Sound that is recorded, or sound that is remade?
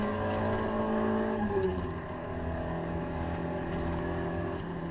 remade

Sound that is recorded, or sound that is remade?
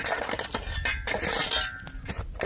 recorded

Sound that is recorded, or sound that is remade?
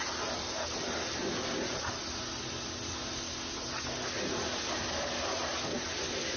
recorded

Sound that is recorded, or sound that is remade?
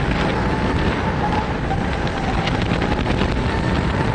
recorded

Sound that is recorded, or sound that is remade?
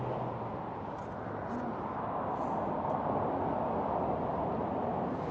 recorded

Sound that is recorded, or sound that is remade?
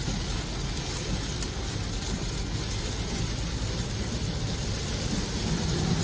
recorded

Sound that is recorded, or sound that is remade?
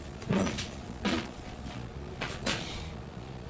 remade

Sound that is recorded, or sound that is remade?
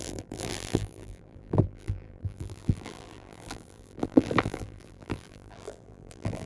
remade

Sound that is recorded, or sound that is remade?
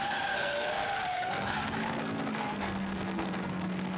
remade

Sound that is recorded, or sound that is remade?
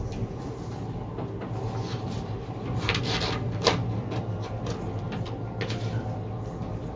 recorded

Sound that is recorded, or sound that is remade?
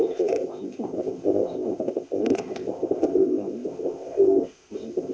remade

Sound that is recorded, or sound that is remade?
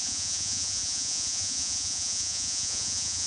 remade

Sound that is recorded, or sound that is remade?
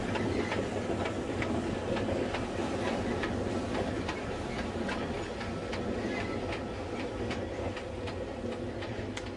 recorded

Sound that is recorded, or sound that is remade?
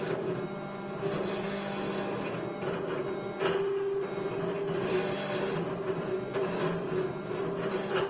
recorded